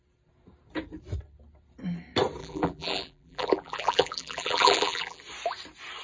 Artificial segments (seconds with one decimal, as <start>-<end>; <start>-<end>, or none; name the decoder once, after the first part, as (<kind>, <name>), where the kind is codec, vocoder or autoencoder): 2.4-5.2 (vocoder, BigVGAN v2)